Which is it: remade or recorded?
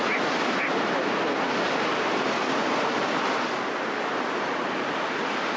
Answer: recorded